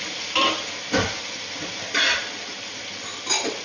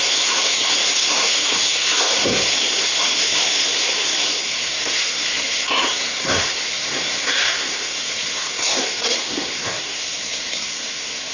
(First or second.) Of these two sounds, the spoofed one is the second